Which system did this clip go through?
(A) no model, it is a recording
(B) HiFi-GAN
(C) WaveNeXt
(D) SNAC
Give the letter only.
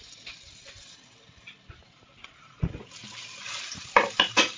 A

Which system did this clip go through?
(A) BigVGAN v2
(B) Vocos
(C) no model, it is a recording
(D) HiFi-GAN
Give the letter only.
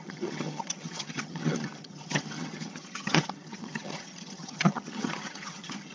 D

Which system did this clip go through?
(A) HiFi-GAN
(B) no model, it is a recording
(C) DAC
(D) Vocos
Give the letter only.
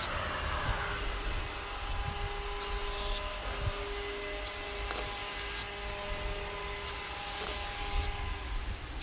B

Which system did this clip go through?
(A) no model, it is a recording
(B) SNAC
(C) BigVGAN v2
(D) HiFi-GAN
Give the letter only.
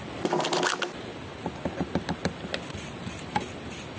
A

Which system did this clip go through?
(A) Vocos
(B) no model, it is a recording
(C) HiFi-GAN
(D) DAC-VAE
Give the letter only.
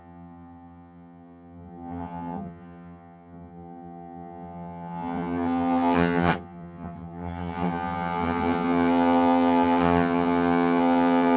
C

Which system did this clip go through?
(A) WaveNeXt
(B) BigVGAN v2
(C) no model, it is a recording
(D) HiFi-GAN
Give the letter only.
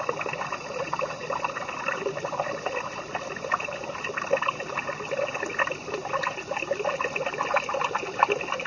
C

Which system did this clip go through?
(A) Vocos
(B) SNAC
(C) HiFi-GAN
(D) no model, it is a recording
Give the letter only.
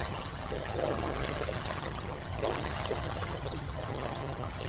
C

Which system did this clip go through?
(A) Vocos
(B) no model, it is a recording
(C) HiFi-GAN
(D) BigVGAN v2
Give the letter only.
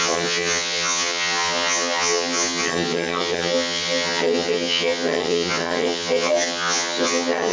C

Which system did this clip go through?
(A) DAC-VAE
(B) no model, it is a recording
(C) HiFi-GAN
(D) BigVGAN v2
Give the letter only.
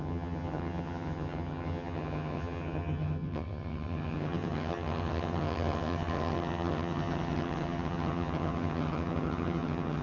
C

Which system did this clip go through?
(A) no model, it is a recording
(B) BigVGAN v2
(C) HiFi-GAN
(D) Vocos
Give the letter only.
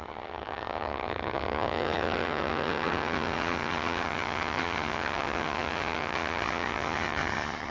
C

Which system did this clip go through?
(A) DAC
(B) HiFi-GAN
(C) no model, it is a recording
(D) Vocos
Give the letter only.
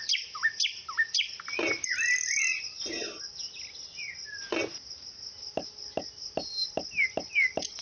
C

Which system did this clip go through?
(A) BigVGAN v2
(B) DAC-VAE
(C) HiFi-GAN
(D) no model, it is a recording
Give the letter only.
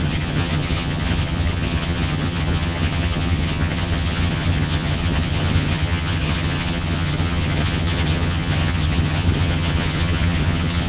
C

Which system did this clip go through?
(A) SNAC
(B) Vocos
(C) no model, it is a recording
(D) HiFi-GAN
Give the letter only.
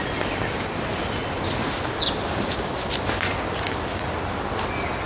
C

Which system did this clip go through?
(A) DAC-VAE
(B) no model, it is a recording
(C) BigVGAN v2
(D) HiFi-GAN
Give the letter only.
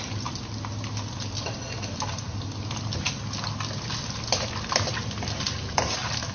B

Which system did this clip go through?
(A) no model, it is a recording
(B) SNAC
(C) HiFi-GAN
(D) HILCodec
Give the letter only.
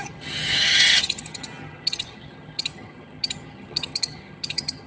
C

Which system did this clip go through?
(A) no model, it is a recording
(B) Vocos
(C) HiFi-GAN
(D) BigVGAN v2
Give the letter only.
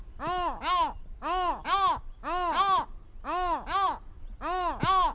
A